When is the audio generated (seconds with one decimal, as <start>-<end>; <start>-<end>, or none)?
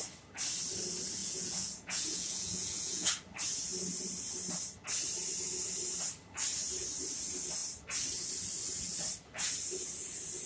1.2-3.1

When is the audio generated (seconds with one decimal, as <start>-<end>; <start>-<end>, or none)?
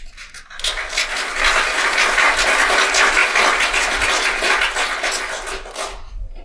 none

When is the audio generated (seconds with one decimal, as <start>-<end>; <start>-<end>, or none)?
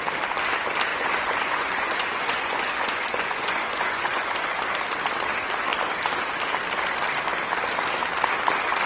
0.9-4.6